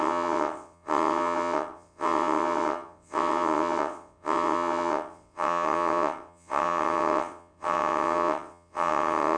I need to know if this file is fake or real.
fake